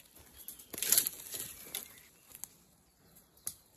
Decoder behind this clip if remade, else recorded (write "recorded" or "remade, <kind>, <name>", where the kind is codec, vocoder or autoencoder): recorded